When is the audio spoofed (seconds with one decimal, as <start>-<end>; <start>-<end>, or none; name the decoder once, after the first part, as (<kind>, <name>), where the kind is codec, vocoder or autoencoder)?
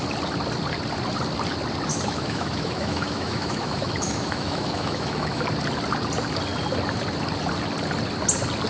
1.9-5.4 (autoencoder, DAC-VAE)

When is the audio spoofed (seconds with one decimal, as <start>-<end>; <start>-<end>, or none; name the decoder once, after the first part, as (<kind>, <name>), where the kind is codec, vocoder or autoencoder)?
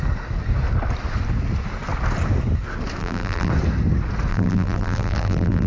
3.0-3.5 (vocoder, BigVGAN v2); 4.3-5.7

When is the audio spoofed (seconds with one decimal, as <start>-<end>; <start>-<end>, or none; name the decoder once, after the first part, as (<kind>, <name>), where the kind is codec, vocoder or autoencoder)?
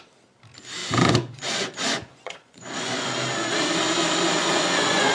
0.8-3.1 (vocoder, Vocos); 4.4-5.1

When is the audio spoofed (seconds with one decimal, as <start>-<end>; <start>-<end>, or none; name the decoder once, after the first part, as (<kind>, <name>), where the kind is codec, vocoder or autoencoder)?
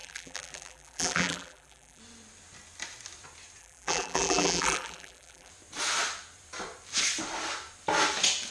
0.0-2.0 (vocoder, BigVGAN v2); 3.6-5.5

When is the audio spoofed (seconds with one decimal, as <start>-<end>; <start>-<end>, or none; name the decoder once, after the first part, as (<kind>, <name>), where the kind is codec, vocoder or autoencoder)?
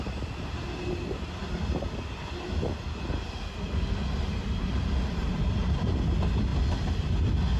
none